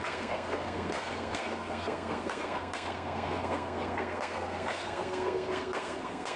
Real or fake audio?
fake